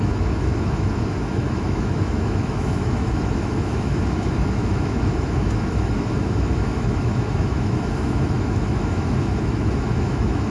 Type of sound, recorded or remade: remade